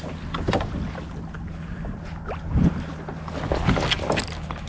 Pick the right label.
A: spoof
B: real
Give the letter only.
B